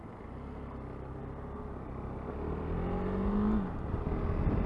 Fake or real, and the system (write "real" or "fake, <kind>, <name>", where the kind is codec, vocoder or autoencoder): real